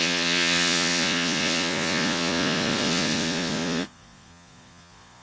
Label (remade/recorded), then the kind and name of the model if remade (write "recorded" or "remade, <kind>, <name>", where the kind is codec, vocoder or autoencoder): remade, vocoder, Vocos